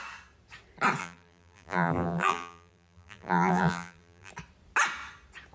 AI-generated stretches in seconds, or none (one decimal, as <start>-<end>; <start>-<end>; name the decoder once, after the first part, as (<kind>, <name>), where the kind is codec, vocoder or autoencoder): 1.0-4.3 (vocoder, BigVGAN v2)